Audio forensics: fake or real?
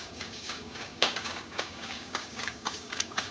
fake